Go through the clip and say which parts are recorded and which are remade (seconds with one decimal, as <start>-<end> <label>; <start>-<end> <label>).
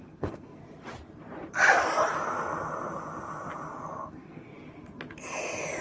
0.0-0.6 remade; 0.6-4.1 recorded; 4.1-4.5 remade; 4.5-5.8 recorded